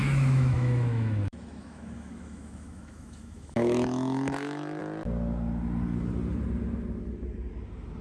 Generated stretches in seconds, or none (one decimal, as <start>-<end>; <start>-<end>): 0.0-4.8